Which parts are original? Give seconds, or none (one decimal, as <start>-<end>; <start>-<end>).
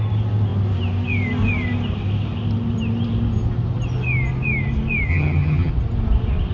0.0-5.1; 5.7-6.5